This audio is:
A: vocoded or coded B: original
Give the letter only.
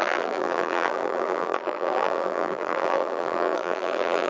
A